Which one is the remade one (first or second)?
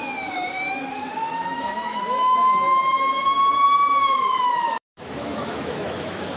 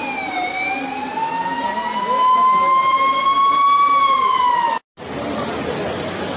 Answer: first